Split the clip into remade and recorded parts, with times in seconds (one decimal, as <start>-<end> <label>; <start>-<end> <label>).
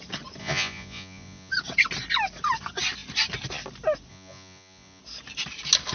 0.0-0.4 recorded; 0.4-1.5 remade; 1.5-4.1 recorded; 4.1-5.0 remade; 5.0-5.9 recorded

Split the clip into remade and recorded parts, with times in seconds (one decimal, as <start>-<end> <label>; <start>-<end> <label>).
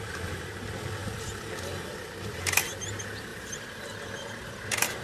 0.0-1.0 recorded; 1.0-1.5 remade; 1.5-3.3 recorded; 3.3-4.4 remade; 4.4-5.0 recorded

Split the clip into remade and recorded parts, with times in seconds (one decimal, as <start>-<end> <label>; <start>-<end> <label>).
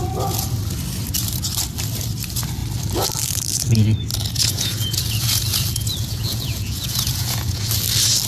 0.0-4.1 recorded; 4.1-7.7 remade; 7.7-8.3 recorded